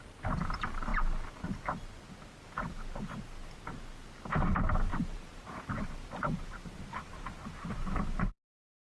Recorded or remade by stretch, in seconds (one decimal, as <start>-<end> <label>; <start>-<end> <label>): 0.0-0.9 remade; 0.9-4.3 recorded; 4.3-8.8 remade